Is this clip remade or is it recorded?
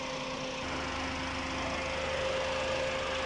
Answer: recorded